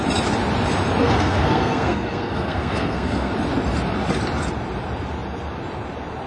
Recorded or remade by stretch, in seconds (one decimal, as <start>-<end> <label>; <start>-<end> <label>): 0.0-1.0 recorded; 1.0-3.3 remade; 3.3-6.3 recorded